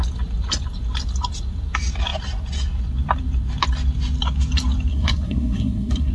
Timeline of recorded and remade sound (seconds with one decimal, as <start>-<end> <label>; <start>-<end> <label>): 0.0-4.9 recorded; 4.9-6.1 remade